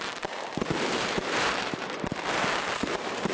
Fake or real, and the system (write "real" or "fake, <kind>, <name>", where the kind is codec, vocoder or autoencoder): fake, vocoder, BigVGAN v2